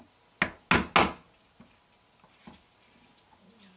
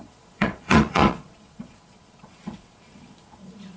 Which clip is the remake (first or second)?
second